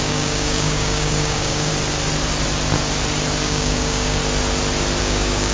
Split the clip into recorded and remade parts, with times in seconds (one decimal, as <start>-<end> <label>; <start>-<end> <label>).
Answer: 0.0-1.7 remade; 1.7-3.4 recorded; 3.4-4.2 remade; 4.2-5.0 recorded; 5.0-5.5 remade